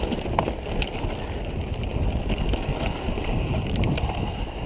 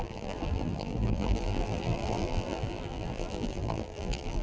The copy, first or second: second